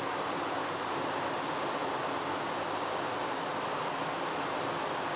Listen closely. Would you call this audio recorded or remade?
recorded